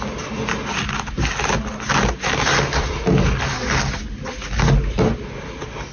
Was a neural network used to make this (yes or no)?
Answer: no